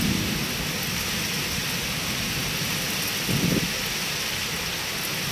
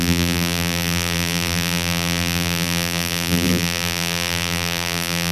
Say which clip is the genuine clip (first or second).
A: first